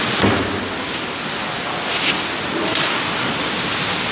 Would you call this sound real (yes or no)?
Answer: yes